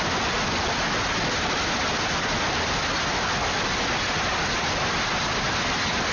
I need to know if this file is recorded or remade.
recorded